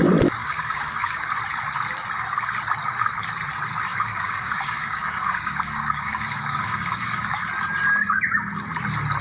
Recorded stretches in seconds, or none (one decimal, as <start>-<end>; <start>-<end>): 0.0-0.4; 1.3-3.9; 7.4-9.2